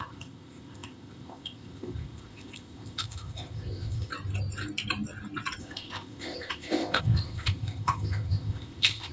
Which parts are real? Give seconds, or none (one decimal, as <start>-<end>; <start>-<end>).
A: 4.1-5.6